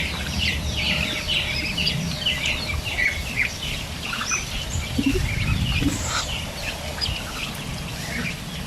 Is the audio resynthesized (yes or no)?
yes